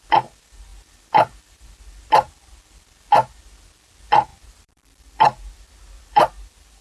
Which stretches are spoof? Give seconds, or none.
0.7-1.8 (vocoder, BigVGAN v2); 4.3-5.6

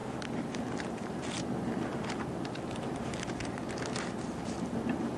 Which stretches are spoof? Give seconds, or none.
none

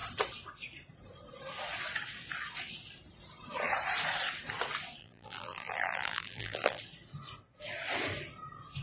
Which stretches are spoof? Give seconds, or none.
5.0-6.8 (vocoder, BigVGAN v2)